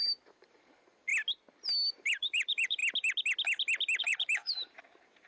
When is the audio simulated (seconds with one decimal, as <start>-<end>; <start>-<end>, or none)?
0.0-1.1; 2.0-2.8; 4.0-5.3